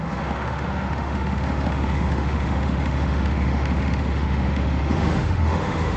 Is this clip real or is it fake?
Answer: fake